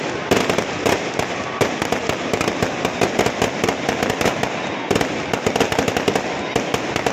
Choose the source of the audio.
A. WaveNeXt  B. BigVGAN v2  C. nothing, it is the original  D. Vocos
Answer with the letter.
C